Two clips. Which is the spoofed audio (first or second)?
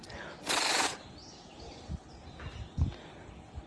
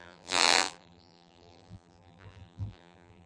second